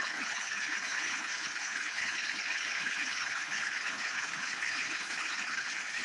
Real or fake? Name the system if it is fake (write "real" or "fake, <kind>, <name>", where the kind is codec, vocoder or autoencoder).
fake, codec, HILCodec